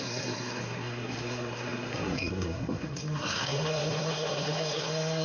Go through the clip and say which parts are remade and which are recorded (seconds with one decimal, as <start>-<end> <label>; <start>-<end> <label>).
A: 0.0-5.2 remade